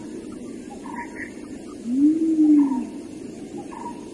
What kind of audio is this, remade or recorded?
recorded